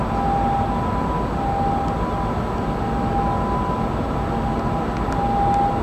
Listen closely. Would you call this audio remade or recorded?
recorded